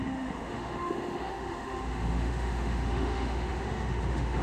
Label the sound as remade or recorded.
remade